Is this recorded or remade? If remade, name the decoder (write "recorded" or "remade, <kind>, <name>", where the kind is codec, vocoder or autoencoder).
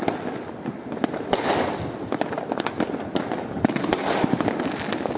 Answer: recorded